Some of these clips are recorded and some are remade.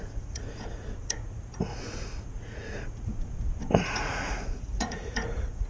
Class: remade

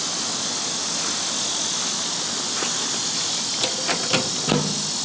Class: recorded